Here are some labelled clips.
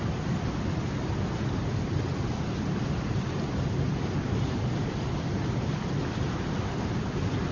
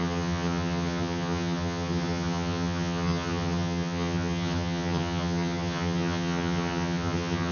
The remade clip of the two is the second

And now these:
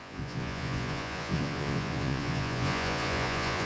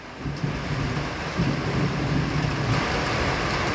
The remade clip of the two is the first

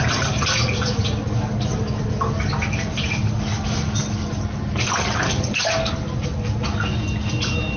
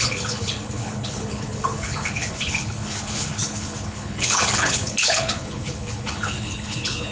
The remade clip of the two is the second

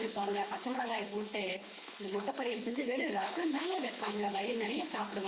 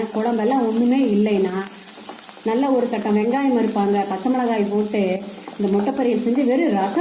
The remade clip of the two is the first